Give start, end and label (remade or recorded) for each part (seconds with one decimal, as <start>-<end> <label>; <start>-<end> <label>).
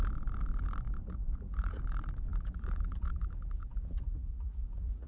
0.0-1.0 recorded; 1.0-1.8 remade; 1.8-2.3 recorded; 2.3-5.1 remade